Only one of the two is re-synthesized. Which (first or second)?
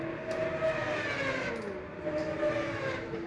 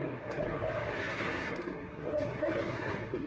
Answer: second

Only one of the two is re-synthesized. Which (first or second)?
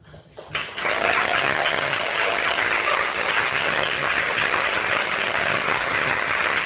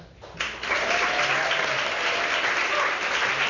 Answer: first